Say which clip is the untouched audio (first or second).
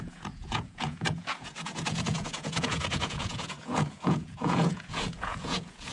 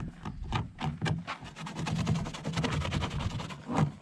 second